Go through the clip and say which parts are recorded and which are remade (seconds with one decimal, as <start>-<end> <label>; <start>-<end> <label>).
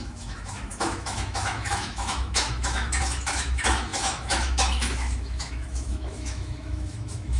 0.0-7.4 remade